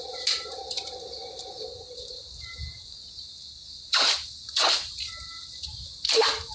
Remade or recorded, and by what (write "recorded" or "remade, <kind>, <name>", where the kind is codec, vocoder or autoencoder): remade, vocoder, BigVGAN v2